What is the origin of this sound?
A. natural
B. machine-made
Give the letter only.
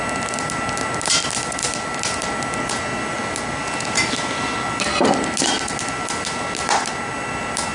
A